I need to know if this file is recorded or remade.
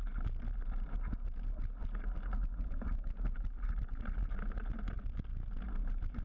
recorded